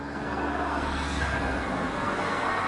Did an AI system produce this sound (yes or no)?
yes